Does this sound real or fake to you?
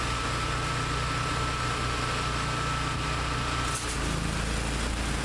real